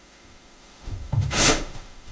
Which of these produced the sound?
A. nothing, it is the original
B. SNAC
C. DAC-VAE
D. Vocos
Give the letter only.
C